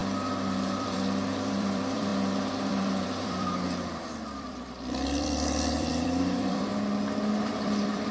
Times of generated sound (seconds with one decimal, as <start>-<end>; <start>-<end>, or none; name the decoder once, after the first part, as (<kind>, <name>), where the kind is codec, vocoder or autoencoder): 0.7-6.7 (vocoder, BigVGAN v2); 7.5-8.1